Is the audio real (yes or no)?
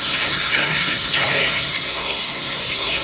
no